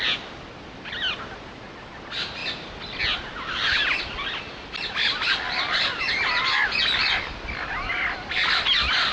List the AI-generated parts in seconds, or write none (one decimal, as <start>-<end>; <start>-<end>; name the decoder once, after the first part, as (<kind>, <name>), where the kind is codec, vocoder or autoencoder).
2.4-3.0 (vocoder, BigVGAN v2); 3.7-5.1; 7.0-8.6

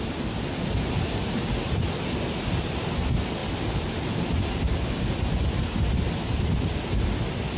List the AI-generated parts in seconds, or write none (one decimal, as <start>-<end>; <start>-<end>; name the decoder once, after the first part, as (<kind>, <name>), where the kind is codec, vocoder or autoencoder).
none

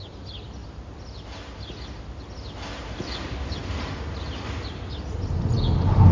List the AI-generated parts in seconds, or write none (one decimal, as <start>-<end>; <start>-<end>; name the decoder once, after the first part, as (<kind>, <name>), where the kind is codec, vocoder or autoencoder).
none

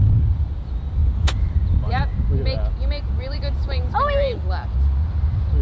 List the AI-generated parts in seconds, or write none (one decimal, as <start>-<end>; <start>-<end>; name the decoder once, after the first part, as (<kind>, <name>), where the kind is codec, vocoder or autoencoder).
0.0-1.0 (vocoder, BigVGAN v2); 1.5-2.1; 3.3-4.3

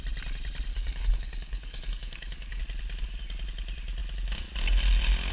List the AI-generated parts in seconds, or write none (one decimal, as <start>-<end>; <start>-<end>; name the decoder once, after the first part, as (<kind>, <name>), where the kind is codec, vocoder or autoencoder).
0.7-2.6 (codec, DAC)

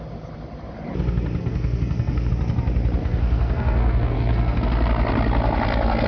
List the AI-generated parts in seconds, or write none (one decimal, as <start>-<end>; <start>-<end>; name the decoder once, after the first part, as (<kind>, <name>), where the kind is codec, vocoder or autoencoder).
1.4-2.3 (codec, SNAC); 3.0-4.6

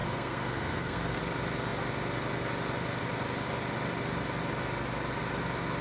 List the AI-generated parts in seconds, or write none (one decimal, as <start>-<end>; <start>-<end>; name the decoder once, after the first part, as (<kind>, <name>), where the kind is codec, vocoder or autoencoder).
0.0-1.2 (codec, SNAC)

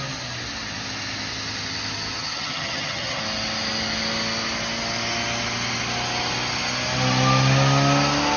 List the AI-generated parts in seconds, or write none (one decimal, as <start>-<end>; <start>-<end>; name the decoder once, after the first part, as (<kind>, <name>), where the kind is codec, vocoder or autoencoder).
2.2-3.2 (vocoder, HiFi-GAN)